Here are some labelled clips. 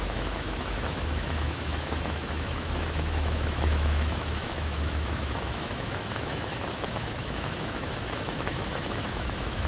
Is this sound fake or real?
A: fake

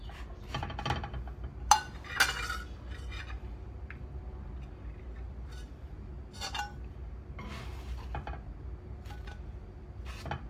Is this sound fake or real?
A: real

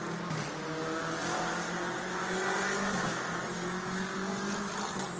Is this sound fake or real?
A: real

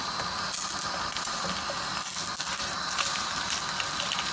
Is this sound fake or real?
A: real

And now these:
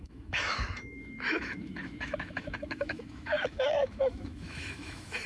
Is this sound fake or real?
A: fake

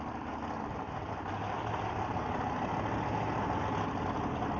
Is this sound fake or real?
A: real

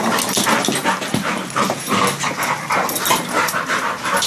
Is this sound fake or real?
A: real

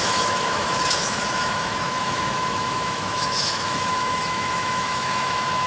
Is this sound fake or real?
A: fake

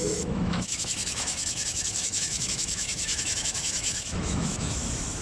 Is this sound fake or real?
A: fake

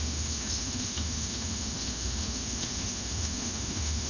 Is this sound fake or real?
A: fake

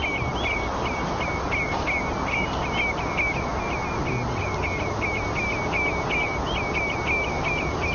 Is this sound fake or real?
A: real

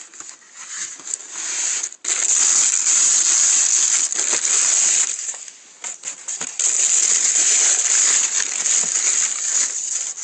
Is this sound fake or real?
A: real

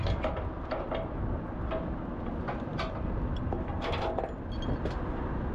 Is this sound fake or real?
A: real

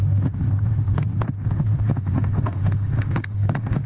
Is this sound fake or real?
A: fake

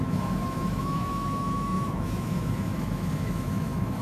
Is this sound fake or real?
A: fake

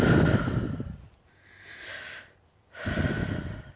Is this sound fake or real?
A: real